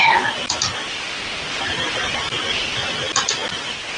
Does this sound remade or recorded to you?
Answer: recorded